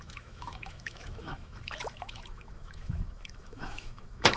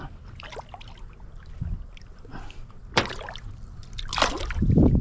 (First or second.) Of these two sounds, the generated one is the first